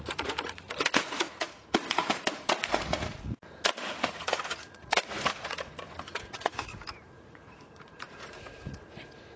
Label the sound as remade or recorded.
remade